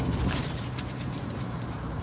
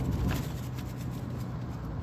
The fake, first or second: first